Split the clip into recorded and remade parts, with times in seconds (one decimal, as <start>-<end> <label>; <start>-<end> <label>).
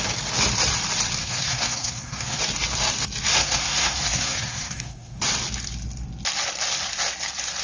0.0-1.2 recorded; 1.2-2.4 remade; 2.4-3.3 recorded; 3.3-5.2 remade; 5.2-7.6 recorded